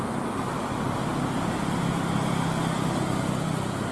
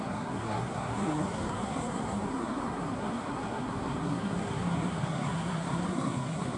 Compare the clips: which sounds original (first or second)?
first